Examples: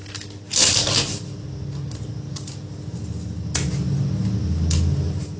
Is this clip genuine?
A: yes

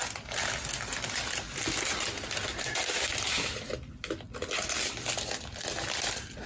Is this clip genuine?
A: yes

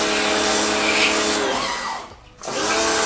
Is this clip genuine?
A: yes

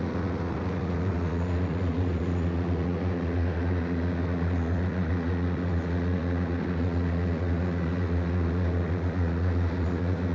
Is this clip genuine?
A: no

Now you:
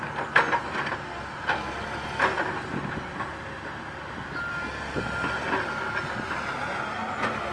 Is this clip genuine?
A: yes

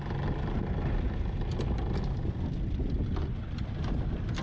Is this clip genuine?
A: yes